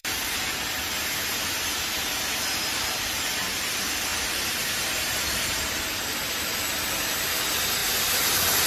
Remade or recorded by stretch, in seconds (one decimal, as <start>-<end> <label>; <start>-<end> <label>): 0.0-2.4 remade; 2.4-4.1 recorded; 4.1-6.0 remade; 6.0-8.7 recorded